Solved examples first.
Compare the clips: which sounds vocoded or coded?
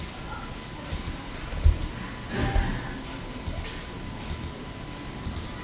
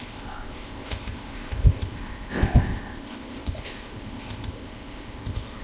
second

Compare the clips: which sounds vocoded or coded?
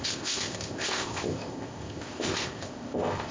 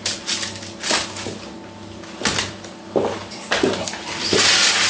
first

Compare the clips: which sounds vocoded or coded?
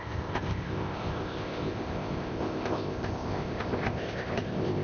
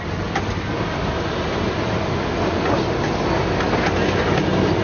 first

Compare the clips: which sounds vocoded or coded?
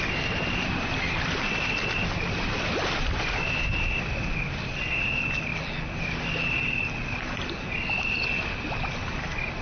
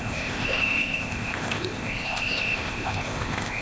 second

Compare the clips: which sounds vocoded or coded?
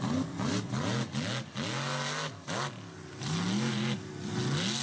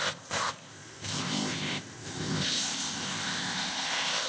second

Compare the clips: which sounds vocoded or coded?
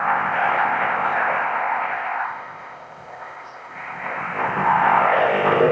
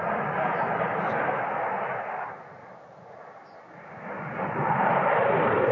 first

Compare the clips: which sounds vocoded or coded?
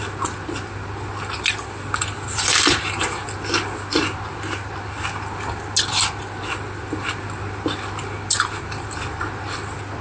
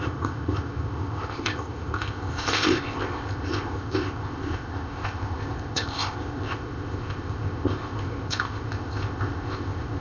second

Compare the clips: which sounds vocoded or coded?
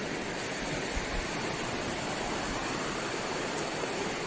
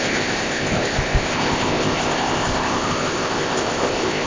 second